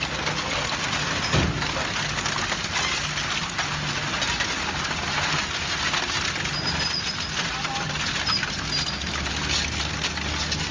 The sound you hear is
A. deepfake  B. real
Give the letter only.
B